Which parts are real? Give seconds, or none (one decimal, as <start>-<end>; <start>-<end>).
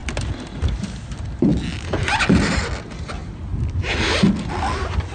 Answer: 0.0-5.1